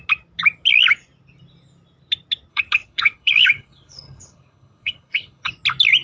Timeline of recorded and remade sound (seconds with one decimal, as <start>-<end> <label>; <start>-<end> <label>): 0.0-2.5 recorded; 2.5-5.5 remade; 5.5-6.0 recorded